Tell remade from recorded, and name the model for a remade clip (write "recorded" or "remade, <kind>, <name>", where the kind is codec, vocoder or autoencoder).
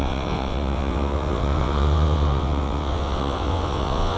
remade, vocoder, WaveNeXt